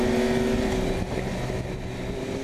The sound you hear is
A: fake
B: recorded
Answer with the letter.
B